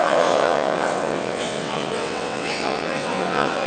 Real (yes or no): no